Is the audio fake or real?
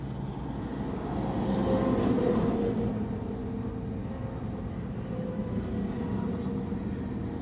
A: real